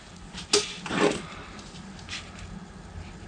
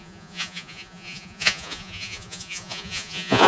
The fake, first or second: second